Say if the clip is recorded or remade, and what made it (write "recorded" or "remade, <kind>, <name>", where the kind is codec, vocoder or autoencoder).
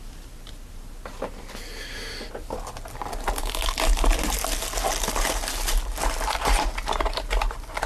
recorded